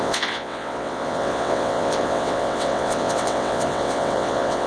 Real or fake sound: fake